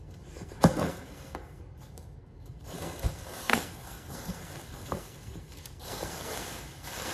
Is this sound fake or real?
fake